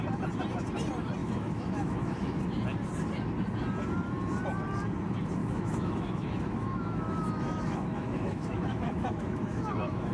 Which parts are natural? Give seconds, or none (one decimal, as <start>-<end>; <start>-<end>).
0.0-1.2; 2.4-5.4

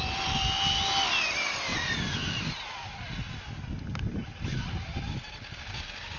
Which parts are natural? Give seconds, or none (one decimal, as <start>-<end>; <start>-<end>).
0.0-6.2

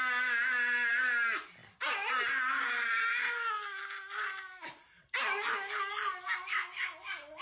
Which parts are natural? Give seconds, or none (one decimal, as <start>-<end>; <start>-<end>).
0.0-7.4

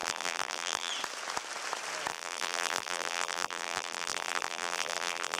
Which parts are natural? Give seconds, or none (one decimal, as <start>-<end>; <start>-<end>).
0.9-2.1

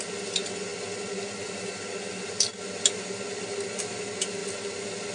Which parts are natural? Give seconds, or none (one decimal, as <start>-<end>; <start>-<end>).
0.0-5.1

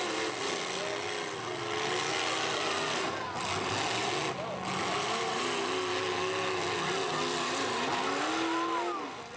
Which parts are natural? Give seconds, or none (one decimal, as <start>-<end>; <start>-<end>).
0.0-9.4

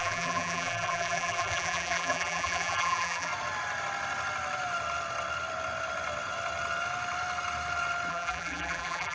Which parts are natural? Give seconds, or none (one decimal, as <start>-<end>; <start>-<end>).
3.3-8.1

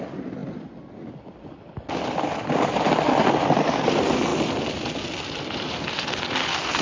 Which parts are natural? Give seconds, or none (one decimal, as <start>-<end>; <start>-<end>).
0.0-6.8